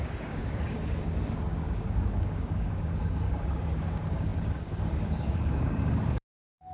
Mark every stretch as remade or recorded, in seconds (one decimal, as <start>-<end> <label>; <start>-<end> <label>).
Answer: 0.0-6.7 remade

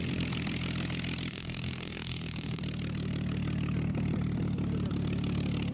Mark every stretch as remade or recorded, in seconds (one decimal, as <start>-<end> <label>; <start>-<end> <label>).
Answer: 0.0-1.3 recorded; 1.3-2.6 remade; 2.6-5.7 recorded

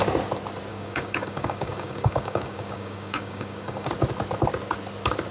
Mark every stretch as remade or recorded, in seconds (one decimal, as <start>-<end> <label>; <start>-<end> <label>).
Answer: 0.0-0.7 recorded; 0.7-3.9 remade; 3.9-5.3 recorded

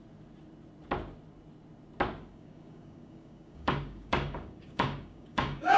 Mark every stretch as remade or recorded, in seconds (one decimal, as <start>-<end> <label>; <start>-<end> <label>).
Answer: 0.0-2.3 recorded; 2.3-5.8 remade

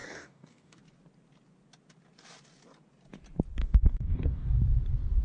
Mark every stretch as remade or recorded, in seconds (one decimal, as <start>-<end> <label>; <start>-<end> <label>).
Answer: 0.0-0.8 remade; 0.8-3.6 recorded; 3.6-4.5 remade; 4.5-5.2 recorded

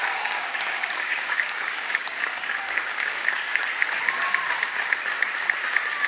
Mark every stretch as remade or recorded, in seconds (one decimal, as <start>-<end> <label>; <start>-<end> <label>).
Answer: 0.0-3.7 remade; 3.7-6.1 recorded